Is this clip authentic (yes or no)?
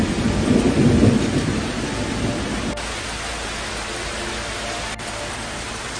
yes